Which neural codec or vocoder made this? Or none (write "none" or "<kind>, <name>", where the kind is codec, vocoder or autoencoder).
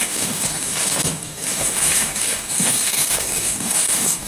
codec, DAC